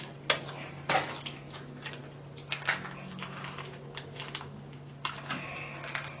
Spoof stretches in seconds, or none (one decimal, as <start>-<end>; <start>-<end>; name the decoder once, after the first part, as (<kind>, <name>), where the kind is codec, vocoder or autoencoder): none